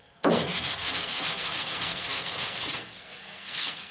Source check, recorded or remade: remade